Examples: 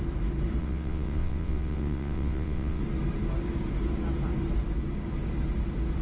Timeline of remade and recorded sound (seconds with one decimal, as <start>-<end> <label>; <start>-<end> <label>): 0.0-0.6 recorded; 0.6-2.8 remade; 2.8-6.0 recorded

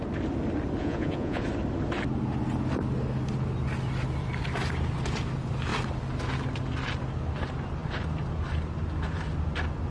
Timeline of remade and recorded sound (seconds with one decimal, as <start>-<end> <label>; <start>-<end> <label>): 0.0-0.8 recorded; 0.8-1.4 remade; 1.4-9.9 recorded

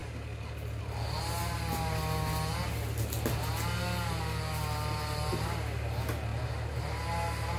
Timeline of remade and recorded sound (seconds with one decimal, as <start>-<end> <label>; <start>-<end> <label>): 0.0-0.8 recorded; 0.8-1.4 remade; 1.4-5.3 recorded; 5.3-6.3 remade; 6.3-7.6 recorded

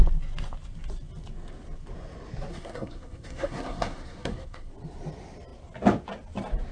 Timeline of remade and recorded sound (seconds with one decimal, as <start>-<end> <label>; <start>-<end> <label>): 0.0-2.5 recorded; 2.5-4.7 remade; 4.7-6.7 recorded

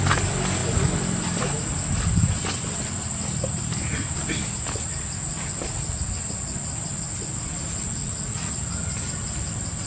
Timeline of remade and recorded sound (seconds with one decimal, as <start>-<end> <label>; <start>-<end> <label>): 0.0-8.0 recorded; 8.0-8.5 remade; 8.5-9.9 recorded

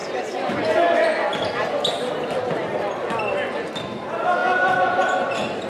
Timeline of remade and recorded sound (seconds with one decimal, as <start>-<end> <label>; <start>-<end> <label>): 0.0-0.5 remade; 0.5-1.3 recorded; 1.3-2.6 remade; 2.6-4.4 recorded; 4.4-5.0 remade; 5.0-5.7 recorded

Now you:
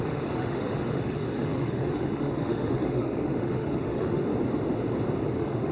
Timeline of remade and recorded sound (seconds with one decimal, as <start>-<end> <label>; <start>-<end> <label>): 0.0-4.3 remade; 4.3-5.3 recorded; 5.3-5.7 remade

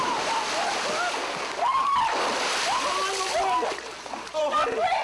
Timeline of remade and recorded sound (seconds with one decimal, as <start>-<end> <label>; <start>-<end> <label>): 0.0-5.0 recorded